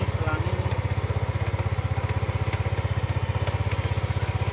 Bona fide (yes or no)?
yes